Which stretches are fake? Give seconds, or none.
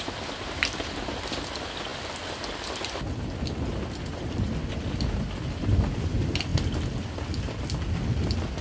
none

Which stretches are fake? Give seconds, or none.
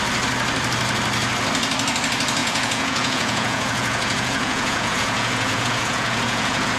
2.4-6.8 (vocoder, Vocos)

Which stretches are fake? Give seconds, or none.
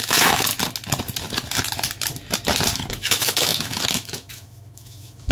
0.0-0.5 (autoencoder, DAC-VAE); 2.9-5.3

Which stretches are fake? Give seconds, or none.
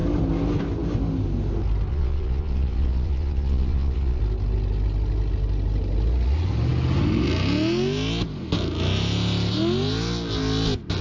1.9-4.2 (vocoder, Vocos)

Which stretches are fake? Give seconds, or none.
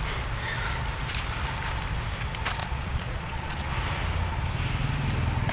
2.6-3.7 (vocoder, Vocos)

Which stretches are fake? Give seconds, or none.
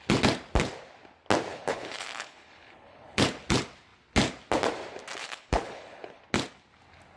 1.5-3.2 (codec, HILCodec); 5.2-6.2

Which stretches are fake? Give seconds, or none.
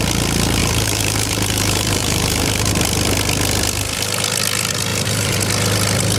0.6-2.7 (vocoder, BigVGAN v2); 4.9-5.4